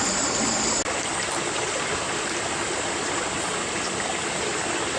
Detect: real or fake real